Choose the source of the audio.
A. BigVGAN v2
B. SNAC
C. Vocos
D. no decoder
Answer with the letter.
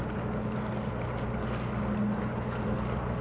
D